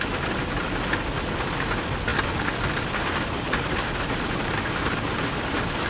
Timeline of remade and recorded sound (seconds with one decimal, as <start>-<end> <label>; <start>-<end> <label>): 0.0-5.9 recorded